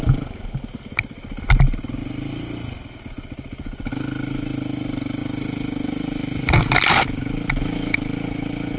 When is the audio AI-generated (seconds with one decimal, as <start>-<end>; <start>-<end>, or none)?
none